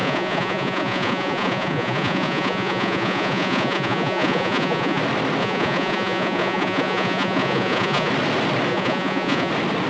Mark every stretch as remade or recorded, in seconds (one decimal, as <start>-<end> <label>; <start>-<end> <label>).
0.0-5.0 remade; 5.0-5.4 recorded; 5.4-8.1 remade; 8.1-8.7 recorded; 8.7-9.5 remade; 9.5-9.9 recorded